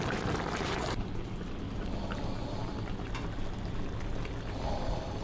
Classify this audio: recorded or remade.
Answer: recorded